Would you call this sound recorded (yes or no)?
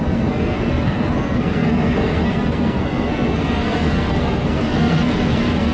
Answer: no